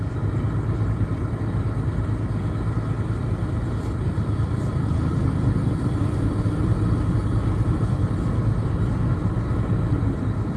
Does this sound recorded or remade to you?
remade